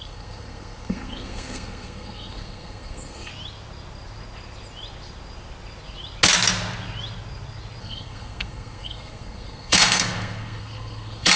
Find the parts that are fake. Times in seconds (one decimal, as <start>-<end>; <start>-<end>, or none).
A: 0.0-3.3; 7.8-11.4